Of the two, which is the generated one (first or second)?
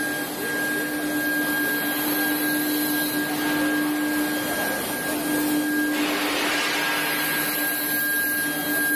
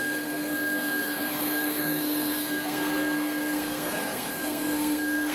second